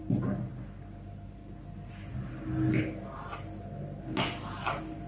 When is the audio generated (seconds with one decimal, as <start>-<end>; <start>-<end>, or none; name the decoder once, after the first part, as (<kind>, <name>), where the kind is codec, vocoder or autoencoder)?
none